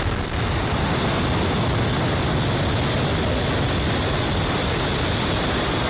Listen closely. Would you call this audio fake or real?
real